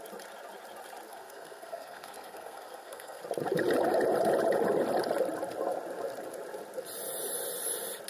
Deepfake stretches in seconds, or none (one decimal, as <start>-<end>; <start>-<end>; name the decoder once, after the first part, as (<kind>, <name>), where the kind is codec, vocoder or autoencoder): 1.1-3.2 (codec, SNAC)